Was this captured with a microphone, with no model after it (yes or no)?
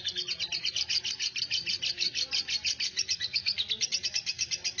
yes